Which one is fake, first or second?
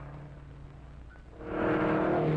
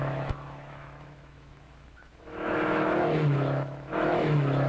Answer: second